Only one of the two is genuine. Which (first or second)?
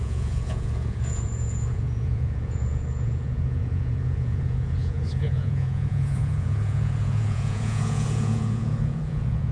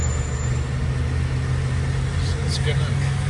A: second